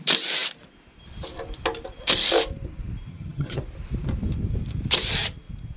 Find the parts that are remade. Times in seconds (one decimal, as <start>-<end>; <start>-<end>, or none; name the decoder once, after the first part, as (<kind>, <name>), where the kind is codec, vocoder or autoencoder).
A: 3.1-3.6 (vocoder, HiFi-GAN)